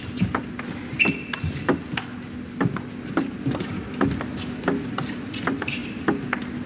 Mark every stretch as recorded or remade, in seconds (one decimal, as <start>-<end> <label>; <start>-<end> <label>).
0.0-6.7 recorded